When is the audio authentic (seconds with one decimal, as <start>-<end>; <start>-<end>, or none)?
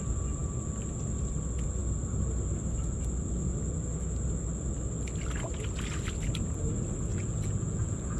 0.0-7.1